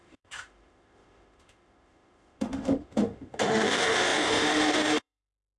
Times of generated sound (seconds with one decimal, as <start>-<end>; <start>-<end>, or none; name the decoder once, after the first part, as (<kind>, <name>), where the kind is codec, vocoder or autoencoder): 0.0-5.6 (autoencoder, DAC-VAE)